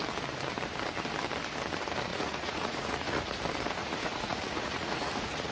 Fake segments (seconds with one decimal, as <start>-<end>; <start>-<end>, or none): 2.1-3.2; 3.8-5.5